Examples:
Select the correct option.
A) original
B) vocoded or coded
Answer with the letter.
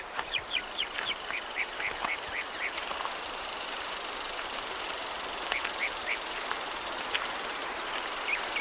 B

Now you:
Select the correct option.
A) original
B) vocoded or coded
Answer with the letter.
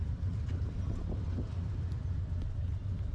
B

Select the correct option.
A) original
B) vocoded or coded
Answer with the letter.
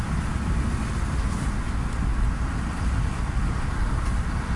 A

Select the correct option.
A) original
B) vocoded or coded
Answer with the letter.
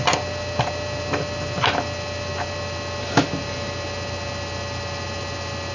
A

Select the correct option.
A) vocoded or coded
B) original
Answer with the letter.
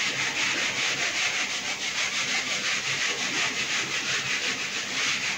B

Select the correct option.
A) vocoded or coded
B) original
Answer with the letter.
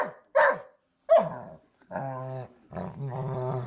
B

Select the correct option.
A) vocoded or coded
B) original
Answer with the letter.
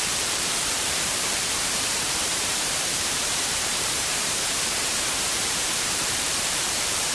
A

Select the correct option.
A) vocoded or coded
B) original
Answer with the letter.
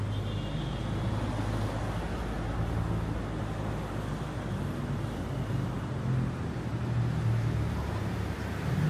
B